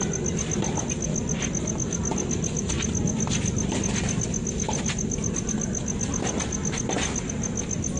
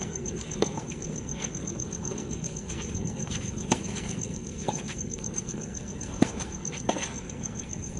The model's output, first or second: second